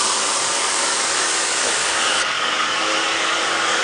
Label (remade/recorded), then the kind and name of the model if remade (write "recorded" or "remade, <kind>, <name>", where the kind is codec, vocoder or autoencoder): remade, codec, DAC